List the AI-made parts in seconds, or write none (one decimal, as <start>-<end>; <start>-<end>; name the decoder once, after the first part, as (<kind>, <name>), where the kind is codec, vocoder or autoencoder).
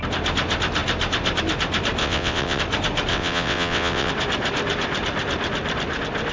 2.0-2.6 (vocoder, WaveNeXt); 3.1-4.1